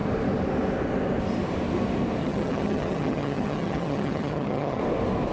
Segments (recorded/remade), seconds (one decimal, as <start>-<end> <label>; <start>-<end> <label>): 0.0-2.2 recorded; 2.2-4.8 remade; 4.8-5.3 recorded